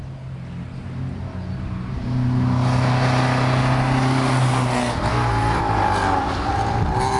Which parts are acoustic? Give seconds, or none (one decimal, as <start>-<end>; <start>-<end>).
0.0-5.1; 5.6-7.2